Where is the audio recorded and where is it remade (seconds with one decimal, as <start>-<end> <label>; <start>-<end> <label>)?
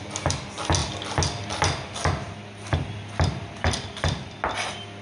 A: 0.0-5.0 recorded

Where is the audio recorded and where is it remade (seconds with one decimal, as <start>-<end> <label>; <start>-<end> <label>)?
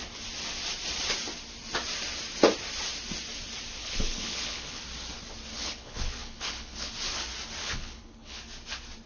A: 0.0-3.8 recorded; 3.8-4.8 remade; 4.8-5.5 recorded; 5.5-6.9 remade; 6.9-7.6 recorded; 7.6-8.4 remade; 8.4-9.1 recorded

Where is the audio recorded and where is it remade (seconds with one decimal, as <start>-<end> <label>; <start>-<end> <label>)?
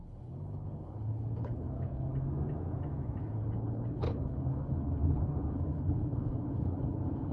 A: 0.0-2.1 remade; 2.1-3.2 recorded; 3.2-7.3 remade